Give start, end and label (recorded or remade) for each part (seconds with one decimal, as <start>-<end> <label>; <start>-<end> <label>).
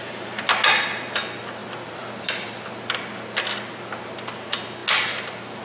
0.0-1.6 recorded; 1.6-2.7 remade; 2.7-5.6 recorded